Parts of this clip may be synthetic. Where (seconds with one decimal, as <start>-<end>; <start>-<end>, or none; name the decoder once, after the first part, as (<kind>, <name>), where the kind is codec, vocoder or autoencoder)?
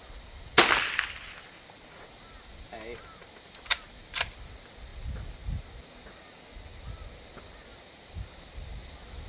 none